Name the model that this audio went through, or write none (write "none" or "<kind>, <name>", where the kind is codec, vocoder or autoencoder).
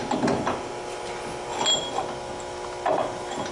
none